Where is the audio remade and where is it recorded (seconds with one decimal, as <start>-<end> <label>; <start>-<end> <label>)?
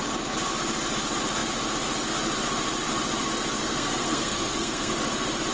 0.0-3.6 recorded; 3.6-4.9 remade; 4.9-5.5 recorded